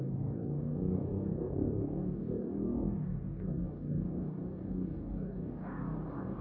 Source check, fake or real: fake